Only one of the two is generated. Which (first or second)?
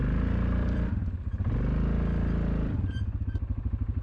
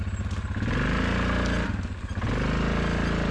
first